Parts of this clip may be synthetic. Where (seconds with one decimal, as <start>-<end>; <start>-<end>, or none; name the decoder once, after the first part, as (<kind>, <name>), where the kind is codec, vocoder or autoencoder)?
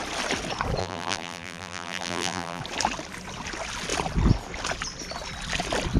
0.8-2.6 (vocoder, BigVGAN v2)